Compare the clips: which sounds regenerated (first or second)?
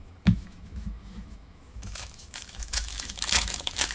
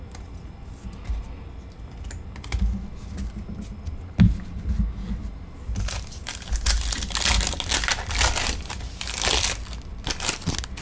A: first